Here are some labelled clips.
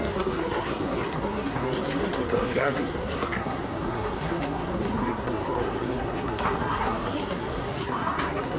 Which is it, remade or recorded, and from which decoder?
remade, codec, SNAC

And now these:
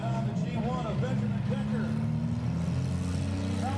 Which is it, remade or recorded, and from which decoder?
recorded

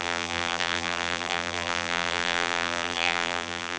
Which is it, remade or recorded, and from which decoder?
remade, vocoder, BigVGAN v2